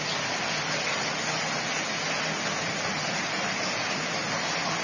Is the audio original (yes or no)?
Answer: yes